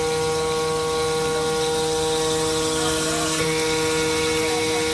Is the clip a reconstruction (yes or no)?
no